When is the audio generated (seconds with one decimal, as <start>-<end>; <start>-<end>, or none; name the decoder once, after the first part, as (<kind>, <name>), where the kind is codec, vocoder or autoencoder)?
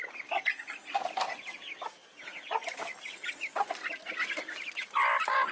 none